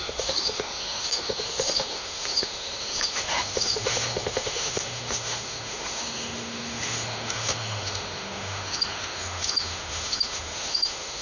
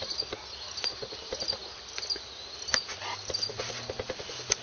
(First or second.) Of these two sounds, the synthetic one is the first